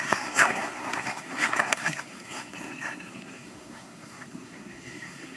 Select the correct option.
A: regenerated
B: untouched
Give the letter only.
A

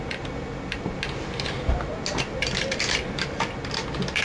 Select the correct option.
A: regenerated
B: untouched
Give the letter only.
B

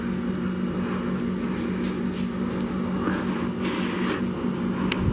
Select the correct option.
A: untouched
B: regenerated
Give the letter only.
A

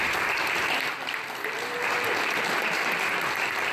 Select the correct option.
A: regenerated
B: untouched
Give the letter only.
B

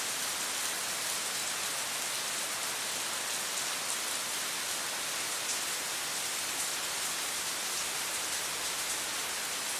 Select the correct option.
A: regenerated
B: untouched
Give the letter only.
B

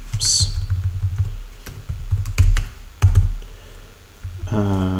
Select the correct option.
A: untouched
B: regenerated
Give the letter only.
A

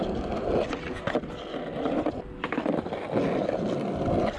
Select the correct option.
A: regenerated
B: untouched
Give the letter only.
B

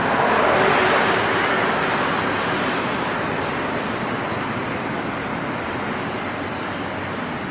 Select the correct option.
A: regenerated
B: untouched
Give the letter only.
B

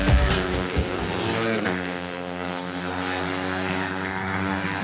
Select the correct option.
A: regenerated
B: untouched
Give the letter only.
A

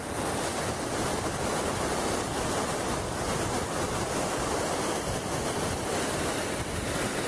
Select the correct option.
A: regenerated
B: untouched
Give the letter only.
A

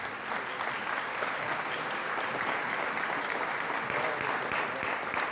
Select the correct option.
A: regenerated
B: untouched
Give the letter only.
B